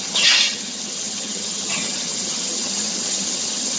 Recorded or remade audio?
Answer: remade